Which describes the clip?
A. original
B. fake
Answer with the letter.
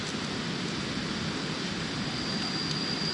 A